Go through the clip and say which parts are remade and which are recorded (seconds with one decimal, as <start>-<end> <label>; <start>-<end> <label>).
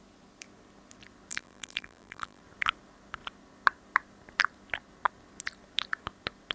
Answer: 0.0-1.3 recorded; 1.3-2.4 remade; 2.4-6.5 recorded